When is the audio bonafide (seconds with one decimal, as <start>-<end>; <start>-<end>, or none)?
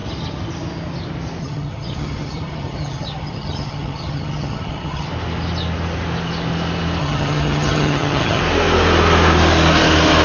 0.0-1.4; 5.1-7.0; 8.4-10.2